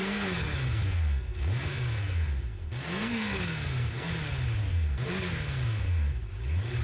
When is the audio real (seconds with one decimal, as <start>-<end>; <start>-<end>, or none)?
4.1-4.6; 6.3-6.8